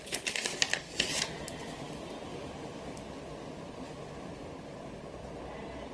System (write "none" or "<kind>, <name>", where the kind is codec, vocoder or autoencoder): none